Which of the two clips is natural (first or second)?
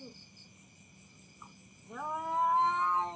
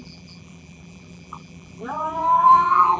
first